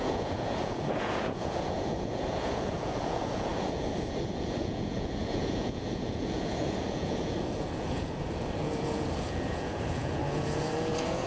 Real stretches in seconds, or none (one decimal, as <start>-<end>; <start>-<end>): none